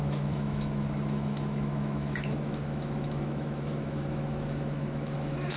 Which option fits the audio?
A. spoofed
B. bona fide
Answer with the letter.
A